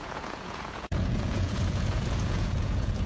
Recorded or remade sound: remade